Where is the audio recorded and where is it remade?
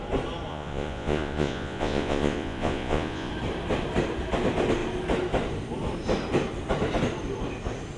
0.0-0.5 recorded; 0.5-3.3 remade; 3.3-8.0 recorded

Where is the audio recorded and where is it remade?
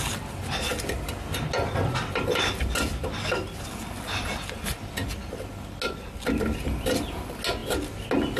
0.0-8.4 recorded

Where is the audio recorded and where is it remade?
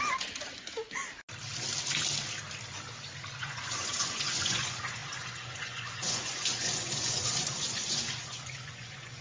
0.0-1.0 remade; 1.0-3.4 recorded; 3.4-9.2 remade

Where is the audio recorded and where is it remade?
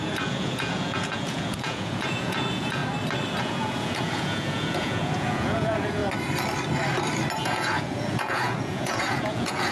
0.0-2.8 remade; 2.8-3.4 recorded; 3.4-6.0 remade; 6.0-7.4 recorded; 7.4-9.7 remade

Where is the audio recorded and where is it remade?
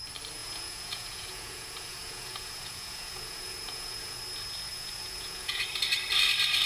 0.0-0.4 recorded; 0.4-4.2 remade; 4.2-4.7 recorded; 4.7-5.7 remade; 5.7-6.7 recorded